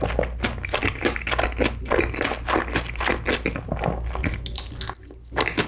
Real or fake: real